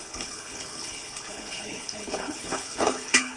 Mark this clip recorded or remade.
remade